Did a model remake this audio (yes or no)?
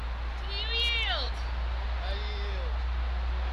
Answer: no